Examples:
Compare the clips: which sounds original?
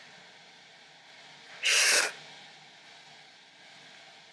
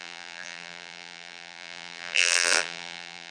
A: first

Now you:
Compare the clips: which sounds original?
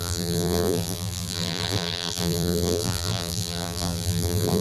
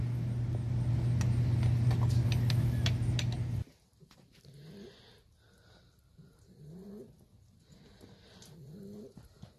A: second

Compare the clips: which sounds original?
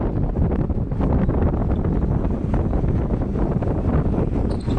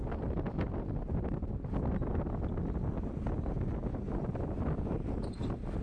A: second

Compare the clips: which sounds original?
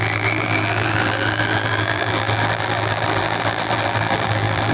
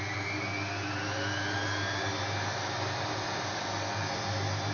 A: second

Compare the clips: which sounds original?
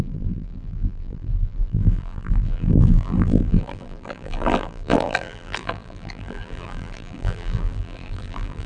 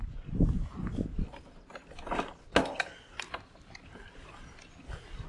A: second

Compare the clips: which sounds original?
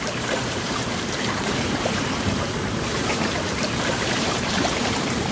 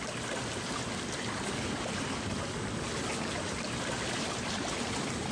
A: second